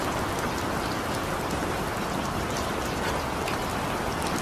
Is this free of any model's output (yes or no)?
yes